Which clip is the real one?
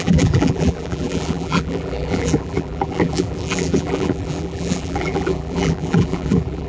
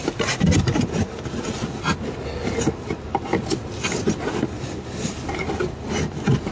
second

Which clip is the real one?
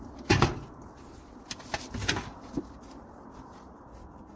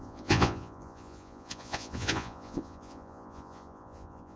first